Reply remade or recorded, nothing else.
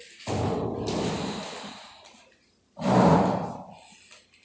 recorded